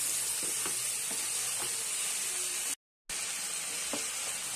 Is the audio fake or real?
real